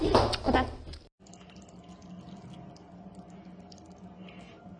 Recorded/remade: recorded